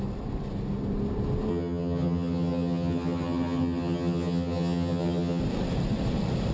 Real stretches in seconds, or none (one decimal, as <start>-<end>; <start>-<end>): 0.0-1.5; 5.4-6.5